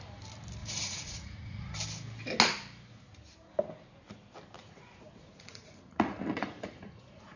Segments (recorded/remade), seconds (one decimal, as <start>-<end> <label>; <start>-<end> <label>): 0.0-0.6 recorded; 0.6-1.7 remade; 1.7-4.6 recorded; 4.6-7.4 remade